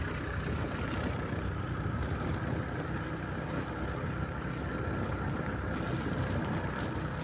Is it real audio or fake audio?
real